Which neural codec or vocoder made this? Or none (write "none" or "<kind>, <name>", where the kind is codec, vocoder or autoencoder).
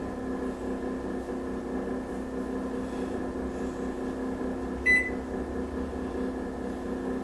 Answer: none